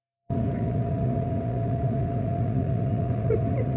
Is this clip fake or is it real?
fake